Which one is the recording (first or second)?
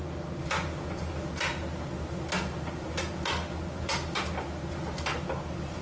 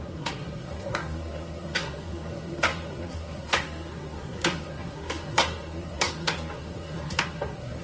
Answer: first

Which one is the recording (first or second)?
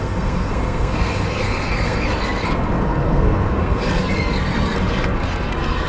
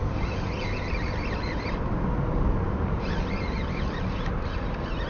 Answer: second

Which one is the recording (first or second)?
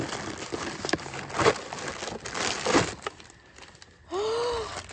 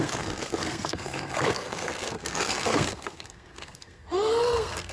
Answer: first